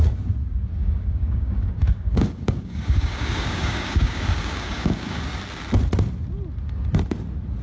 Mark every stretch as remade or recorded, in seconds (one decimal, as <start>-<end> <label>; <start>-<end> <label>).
0.0-0.8 recorded; 0.8-5.4 remade; 5.4-7.6 recorded

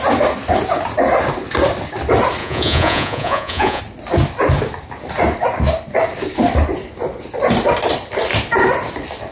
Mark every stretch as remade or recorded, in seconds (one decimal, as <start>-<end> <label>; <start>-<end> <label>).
0.0-2.4 recorded; 2.4-3.8 remade; 3.8-9.3 recorded

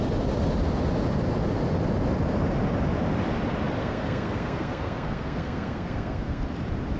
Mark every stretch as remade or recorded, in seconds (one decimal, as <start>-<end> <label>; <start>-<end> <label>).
0.0-3.8 recorded; 3.8-6.4 remade; 6.4-7.0 recorded

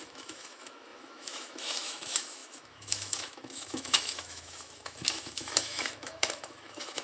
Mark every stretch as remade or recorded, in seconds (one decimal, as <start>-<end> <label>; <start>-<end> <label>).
0.0-7.0 remade

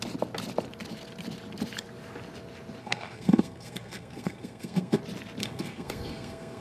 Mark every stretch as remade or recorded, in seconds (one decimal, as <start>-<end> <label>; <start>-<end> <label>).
0.0-2.8 recorded; 2.8-5.0 remade; 5.0-5.4 recorded; 5.4-6.6 remade

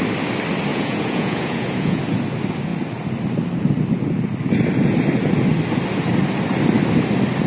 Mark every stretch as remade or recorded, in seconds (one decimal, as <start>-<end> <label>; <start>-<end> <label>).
0.0-0.7 recorded; 0.7-2.0 remade; 2.0-7.5 recorded

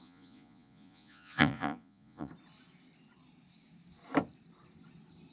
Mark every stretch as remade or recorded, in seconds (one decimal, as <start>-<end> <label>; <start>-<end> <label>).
0.0-2.3 remade; 2.3-5.3 recorded